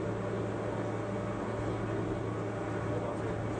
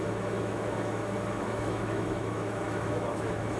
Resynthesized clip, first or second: second